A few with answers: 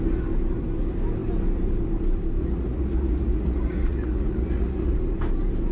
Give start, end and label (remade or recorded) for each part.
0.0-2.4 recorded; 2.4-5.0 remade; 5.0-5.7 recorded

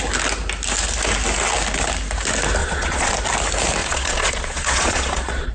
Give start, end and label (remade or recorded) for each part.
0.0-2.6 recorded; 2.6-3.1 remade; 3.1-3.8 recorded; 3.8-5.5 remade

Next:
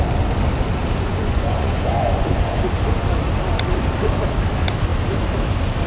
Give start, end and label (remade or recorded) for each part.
0.0-1.1 recorded; 1.1-2.6 remade; 2.6-5.9 recorded

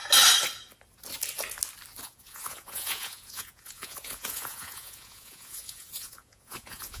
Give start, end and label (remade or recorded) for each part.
0.0-2.0 recorded; 2.0-7.0 remade

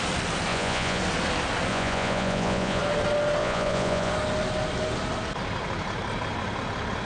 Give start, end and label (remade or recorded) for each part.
0.0-0.5 recorded; 0.5-1.0 remade; 1.0-1.7 recorded; 1.7-2.8 remade; 2.8-3.4 recorded; 3.4-4.1 remade; 4.1-7.1 recorded

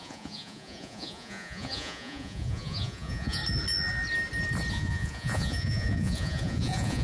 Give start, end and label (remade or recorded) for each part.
0.0-3.4 remade; 3.4-4.7 recorded; 4.7-7.0 remade

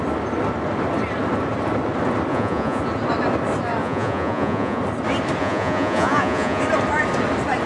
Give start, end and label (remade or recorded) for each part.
0.0-2.3 recorded; 2.3-2.8 remade; 2.8-3.8 recorded; 3.8-4.8 remade; 4.8-5.4 recorded; 5.4-6.6 remade; 6.6-7.7 recorded

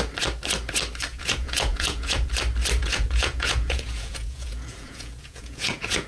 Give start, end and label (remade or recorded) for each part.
0.0-1.1 recorded; 1.1-2.3 remade; 2.3-2.8 recorded; 2.8-6.1 remade